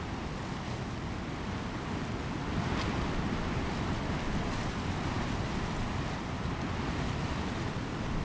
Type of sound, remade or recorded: recorded